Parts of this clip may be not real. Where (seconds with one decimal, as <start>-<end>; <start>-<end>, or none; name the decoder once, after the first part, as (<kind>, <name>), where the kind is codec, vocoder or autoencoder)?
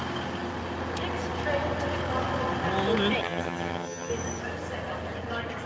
3.2-4.1 (vocoder, HiFi-GAN)